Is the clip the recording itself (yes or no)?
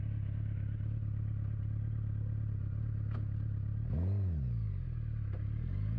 yes